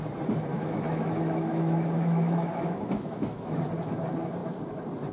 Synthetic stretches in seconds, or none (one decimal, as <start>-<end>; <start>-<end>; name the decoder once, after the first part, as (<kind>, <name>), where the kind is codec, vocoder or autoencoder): 0.5-3.6 (autoencoder, DAC-VAE)

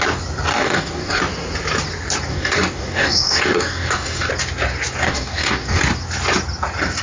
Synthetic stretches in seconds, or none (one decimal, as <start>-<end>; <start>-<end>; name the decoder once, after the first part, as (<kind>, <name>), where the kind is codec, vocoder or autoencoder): 0.5-1.2 (codec, DAC); 2.3-4.3; 5.0-5.8

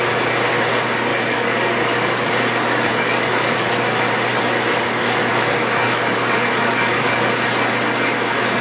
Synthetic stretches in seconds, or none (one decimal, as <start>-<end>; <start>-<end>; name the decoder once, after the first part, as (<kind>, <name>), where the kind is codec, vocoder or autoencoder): 1.1-3.7 (codec, DAC); 4.3-7.2

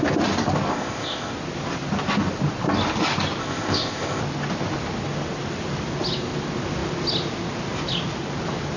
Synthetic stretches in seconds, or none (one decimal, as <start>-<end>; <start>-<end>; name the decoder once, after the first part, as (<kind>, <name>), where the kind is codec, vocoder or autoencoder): 0.7-1.3 (codec, ZipCodec); 3.4-4.2

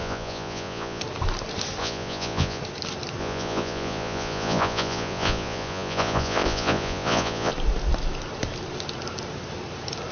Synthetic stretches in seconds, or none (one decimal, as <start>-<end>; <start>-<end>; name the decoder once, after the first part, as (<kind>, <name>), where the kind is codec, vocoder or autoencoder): 0.0-1.0 (vocoder, Vocos); 1.8-2.6; 3.2-7.5

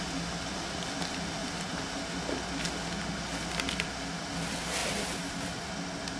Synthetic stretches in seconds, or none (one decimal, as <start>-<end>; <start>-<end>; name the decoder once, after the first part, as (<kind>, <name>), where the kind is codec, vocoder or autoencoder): 1.4-2.2 (vocoder, BigVGAN v2); 4.8-5.7